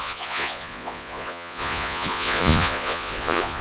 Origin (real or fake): fake